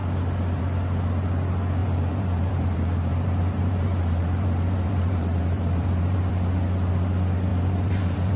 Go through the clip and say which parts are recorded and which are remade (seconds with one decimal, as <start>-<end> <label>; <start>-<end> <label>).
0.0-1.8 recorded; 1.8-6.3 remade; 6.3-7.5 recorded; 7.5-8.4 remade